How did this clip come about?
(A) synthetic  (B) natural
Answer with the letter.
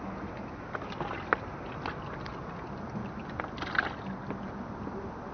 B